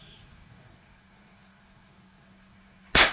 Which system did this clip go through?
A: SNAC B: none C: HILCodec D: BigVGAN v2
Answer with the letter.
A